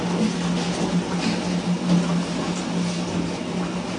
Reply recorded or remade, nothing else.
recorded